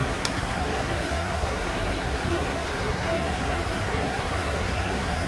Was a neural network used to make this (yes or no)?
yes